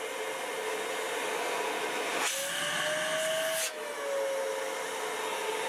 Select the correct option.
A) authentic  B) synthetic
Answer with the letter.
A